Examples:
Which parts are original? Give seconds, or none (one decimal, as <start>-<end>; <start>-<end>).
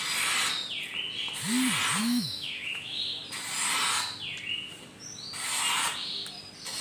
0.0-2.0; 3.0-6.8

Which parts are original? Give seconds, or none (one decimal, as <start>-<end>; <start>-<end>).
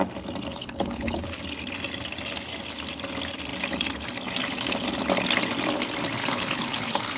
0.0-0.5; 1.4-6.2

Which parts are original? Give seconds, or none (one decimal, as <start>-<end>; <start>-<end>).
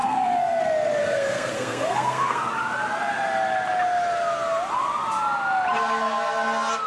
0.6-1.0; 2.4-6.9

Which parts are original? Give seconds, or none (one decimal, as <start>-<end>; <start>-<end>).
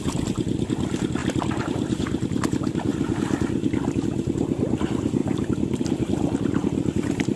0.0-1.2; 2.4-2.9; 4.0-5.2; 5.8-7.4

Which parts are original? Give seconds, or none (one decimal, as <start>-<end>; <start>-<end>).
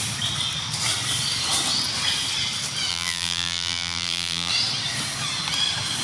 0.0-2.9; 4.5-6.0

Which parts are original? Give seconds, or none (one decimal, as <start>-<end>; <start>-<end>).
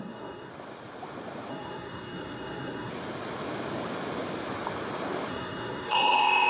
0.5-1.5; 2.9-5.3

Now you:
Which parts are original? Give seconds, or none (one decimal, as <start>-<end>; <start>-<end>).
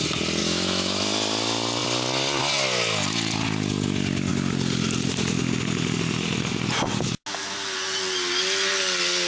0.0-0.4; 1.0-9.3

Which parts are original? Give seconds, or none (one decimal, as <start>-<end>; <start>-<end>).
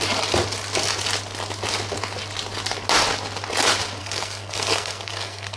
0.0-4.0